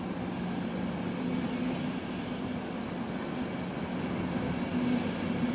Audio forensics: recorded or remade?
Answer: recorded